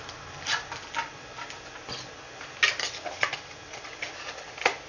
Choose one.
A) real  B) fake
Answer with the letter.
A